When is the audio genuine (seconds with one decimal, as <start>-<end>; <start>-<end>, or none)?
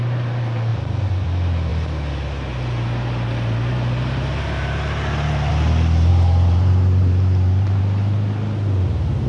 0.0-6.1; 7.8-9.3